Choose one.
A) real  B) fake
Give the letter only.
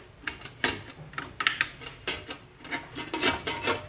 A